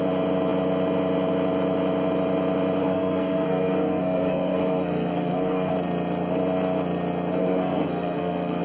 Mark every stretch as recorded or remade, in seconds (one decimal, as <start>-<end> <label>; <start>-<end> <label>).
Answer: 0.0-2.8 recorded; 2.8-5.7 remade; 5.7-7.4 recorded; 7.4-8.6 remade